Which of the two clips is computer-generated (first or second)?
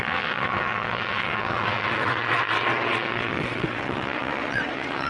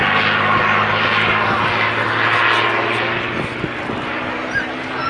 first